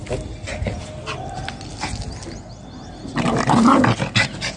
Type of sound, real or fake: real